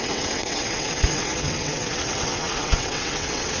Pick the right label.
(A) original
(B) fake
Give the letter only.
B